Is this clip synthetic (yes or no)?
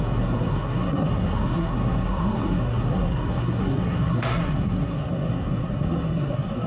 yes